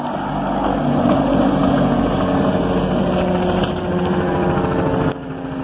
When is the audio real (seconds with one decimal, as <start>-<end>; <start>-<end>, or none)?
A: 0.0-5.6